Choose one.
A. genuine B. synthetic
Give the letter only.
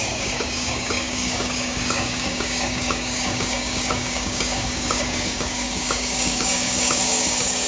B